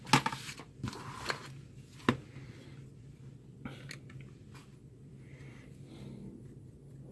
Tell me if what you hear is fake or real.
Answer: real